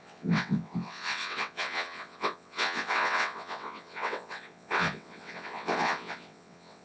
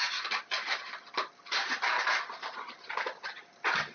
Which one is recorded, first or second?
second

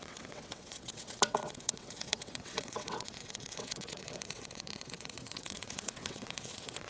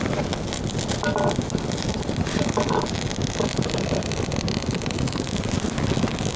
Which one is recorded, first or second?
second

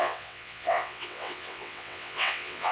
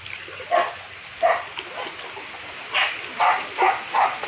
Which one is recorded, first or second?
second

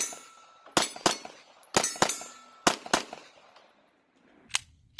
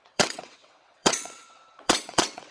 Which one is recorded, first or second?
first